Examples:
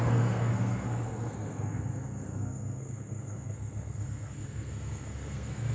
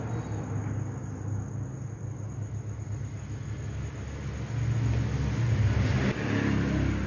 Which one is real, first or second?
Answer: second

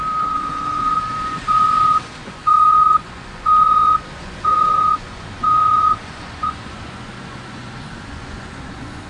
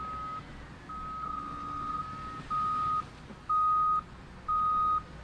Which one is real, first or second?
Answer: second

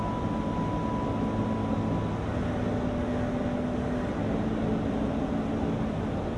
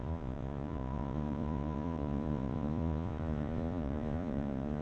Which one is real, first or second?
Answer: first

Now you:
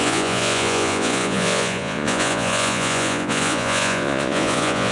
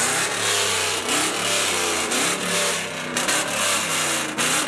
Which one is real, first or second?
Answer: second